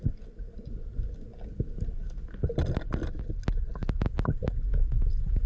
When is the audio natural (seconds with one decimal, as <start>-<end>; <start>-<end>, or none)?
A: 0.0-5.5